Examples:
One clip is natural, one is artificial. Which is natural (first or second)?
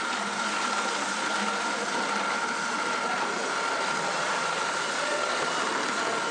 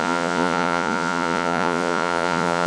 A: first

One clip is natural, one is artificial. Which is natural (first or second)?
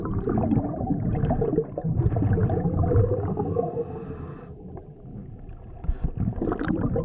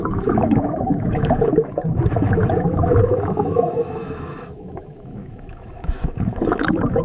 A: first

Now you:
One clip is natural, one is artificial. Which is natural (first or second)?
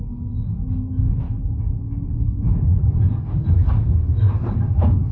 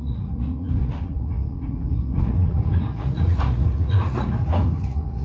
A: first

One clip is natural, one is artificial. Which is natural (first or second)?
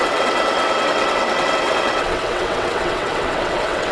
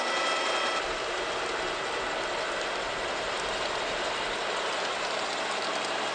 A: second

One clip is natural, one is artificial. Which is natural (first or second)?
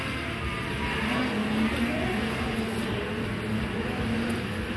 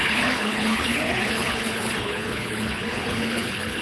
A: first